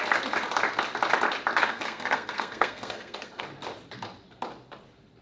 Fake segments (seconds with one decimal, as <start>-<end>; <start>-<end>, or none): 1.7-3.4

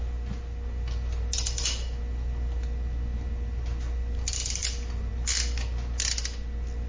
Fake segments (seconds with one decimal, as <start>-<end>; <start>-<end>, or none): none

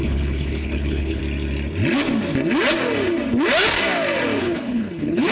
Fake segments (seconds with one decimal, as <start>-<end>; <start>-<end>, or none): 0.0-1.2; 4.4-5.3

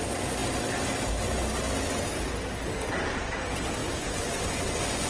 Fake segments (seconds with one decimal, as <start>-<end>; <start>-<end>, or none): 3.8-5.1

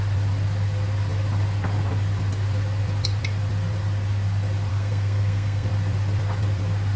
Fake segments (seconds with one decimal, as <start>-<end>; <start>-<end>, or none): 4.7-5.7

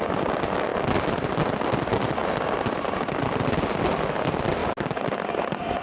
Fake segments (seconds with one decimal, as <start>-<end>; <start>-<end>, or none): none